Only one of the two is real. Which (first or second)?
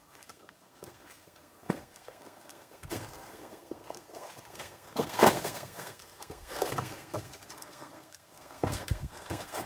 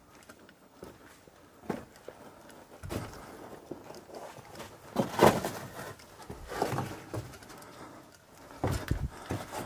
second